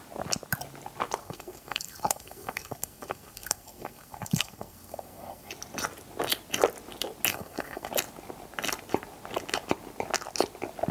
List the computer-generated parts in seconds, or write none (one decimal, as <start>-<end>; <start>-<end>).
1.2-5.5; 7.3-7.9